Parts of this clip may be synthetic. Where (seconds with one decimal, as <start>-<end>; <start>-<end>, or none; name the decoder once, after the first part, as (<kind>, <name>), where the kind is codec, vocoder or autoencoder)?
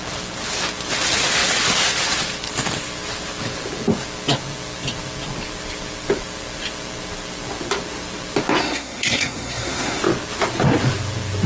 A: 8.6-10.0 (codec, SNAC)